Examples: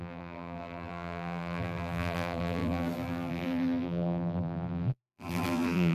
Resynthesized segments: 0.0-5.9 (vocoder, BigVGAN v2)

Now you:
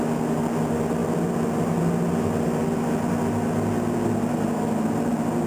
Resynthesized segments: none

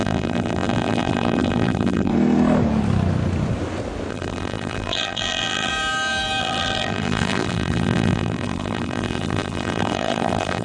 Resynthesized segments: 0.0-2.1 (vocoder, BigVGAN v2); 4.1-5.7; 6.4-10.6

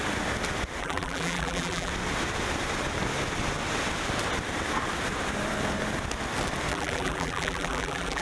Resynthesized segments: 0.8-1.9 (vocoder, BigVGAN v2); 6.7-8.2

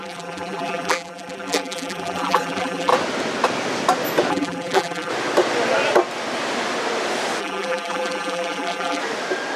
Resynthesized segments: 0.0-2.9 (vocoder, BigVGAN v2); 4.3-5.1; 7.4-9.0

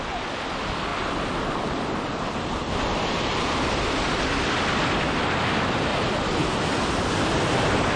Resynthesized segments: 0.9-4.5 (vocoder, BigVGAN v2); 5.9-7.6